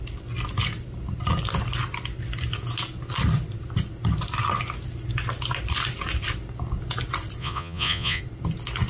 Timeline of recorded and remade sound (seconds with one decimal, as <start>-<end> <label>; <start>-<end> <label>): 0.0-7.4 recorded; 7.4-8.2 remade; 8.2-8.9 recorded